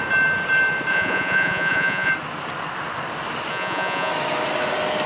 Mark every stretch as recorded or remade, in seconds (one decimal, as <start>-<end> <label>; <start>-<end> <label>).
0.0-0.9 recorded; 0.9-2.1 remade; 2.1-3.5 recorded; 3.5-4.1 remade; 4.1-5.1 recorded